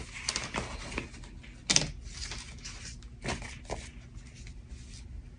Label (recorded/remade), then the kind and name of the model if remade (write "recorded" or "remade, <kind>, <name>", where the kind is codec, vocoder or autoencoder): recorded